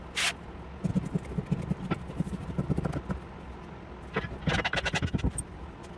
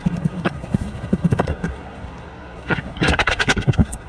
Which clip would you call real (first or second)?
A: first